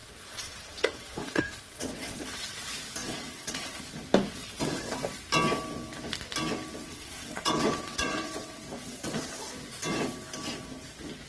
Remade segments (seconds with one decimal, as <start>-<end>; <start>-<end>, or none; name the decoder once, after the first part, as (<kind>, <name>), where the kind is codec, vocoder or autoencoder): 0.0-2.6 (vocoder, WaveNeXt); 3.0-3.8; 4.3-4.9; 6.8-9.0